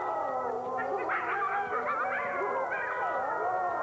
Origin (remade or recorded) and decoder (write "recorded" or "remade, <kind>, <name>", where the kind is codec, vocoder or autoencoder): recorded